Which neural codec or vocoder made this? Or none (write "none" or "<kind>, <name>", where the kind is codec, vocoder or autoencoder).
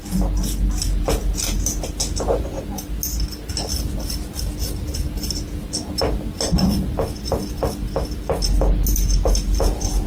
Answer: none